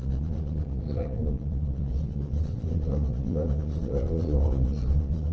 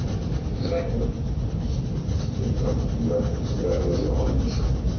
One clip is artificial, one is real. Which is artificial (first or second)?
first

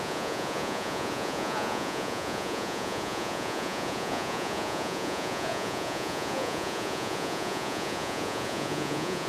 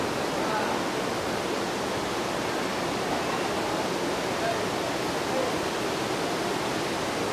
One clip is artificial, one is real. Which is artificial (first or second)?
first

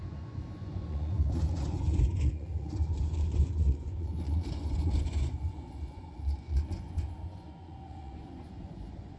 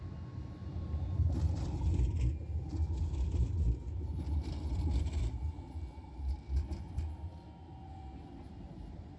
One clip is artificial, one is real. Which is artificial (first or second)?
first